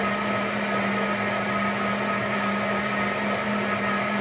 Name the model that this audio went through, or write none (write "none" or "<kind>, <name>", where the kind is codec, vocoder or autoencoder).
none